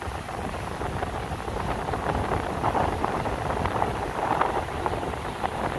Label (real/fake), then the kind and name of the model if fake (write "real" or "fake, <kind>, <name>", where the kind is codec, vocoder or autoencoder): real